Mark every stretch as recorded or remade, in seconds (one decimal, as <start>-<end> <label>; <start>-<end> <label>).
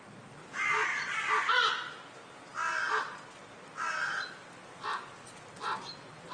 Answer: 0.0-0.7 recorded; 0.7-1.2 remade; 1.2-6.3 recorded